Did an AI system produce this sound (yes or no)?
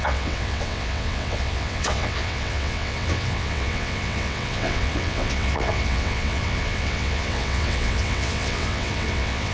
yes